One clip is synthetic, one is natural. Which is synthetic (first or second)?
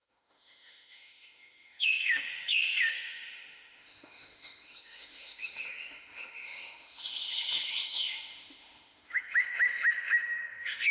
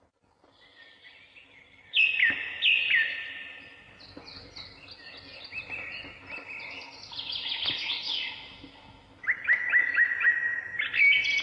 first